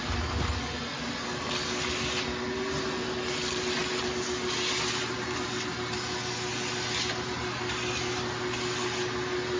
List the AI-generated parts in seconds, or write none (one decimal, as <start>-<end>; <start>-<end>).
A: none